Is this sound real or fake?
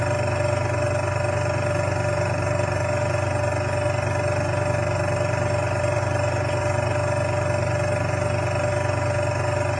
real